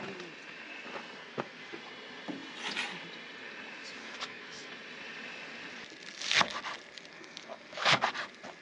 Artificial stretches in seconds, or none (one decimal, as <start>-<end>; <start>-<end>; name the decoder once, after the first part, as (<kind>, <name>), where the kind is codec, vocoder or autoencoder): 1.2-1.8 (codec, SNAC); 4.0-4.7; 7.1-8.1